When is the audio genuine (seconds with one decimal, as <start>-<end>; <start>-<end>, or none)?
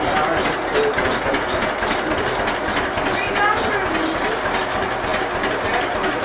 0.0-6.2